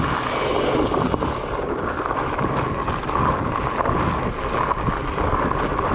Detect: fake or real real